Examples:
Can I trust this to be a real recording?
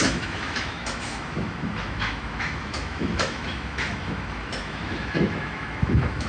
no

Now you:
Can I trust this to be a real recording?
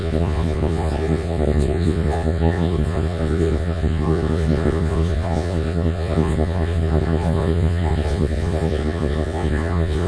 no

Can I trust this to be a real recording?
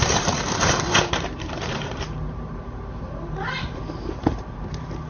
no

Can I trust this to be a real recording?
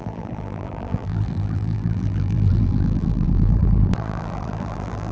no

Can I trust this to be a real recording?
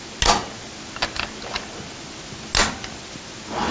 yes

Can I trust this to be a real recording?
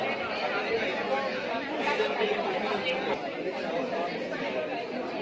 yes